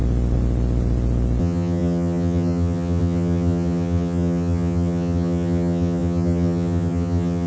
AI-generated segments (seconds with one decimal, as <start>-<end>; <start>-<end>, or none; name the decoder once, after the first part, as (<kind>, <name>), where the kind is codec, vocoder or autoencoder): 1.4-7.5 (vocoder, HiFi-GAN)